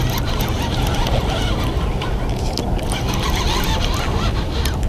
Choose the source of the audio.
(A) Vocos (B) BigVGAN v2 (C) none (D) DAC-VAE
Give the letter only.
C